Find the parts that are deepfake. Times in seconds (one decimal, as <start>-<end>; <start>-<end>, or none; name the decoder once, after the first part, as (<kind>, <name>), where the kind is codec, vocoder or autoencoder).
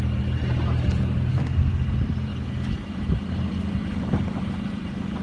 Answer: 1.3-1.8 (codec, SNAC)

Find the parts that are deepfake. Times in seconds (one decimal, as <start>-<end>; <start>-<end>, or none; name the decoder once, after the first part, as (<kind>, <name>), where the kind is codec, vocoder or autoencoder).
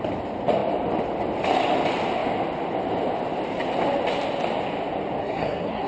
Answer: 5.2-5.9 (codec, SNAC)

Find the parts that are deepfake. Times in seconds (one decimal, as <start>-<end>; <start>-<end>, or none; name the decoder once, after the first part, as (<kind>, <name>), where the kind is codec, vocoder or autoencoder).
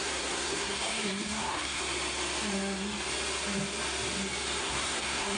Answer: 0.0-1.8 (codec, SNAC); 4.6-5.4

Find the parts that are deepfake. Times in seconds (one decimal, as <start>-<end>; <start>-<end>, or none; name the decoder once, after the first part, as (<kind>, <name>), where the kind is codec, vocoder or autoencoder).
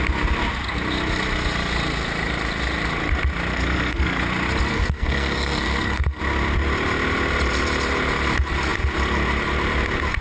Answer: 3.5-4.2 (codec, SNAC); 4.7-6.2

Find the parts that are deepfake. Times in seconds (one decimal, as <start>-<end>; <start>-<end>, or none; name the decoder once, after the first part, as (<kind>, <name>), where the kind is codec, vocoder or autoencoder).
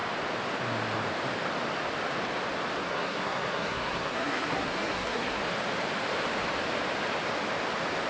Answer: 2.9-5.4 (codec, SNAC)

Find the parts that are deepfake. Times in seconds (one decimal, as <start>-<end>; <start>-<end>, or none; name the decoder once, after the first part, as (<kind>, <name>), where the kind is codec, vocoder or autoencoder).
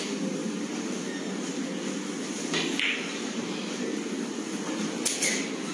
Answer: none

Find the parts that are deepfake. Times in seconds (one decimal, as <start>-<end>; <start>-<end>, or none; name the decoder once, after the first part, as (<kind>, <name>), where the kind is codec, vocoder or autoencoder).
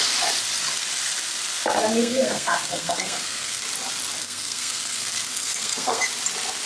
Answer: 2.0-3.6 (codec, SNAC); 4.2-6.0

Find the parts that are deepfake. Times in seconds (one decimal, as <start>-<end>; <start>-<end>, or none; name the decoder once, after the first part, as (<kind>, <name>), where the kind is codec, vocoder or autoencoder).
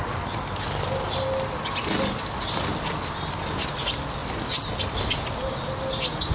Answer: none